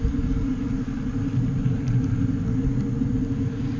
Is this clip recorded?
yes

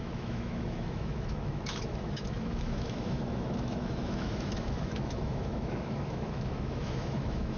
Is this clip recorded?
no